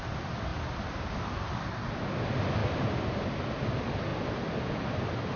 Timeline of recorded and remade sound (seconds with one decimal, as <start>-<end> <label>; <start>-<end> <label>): 0.0-0.5 recorded; 0.5-1.1 remade; 1.1-4.1 recorded; 4.1-4.8 remade; 4.8-5.4 recorded